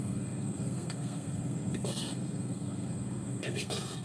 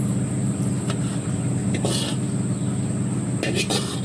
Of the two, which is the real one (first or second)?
second